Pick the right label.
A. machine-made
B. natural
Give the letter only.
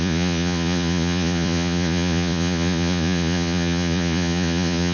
A